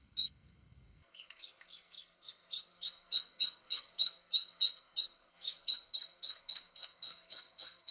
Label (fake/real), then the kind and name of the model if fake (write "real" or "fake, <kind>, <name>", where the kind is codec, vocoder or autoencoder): fake, codec, SNAC